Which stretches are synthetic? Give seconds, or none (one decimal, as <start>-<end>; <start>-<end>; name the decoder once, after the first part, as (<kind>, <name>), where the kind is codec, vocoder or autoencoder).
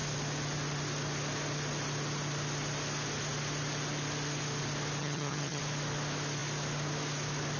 5.0-5.6 (vocoder, HiFi-GAN)